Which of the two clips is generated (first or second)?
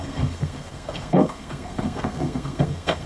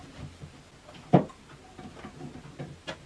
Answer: first